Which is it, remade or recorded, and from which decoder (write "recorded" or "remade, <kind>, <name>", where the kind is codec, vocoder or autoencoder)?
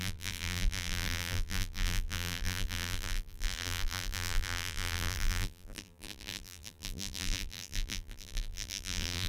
remade, vocoder, BigVGAN v2